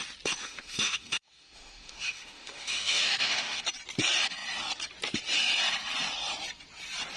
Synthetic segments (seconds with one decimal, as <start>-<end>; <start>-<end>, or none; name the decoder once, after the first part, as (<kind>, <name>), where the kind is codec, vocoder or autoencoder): 0.4-3.6 (autoencoder, DAC-VAE)